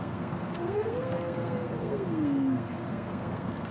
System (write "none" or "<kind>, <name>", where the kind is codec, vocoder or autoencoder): codec, SNAC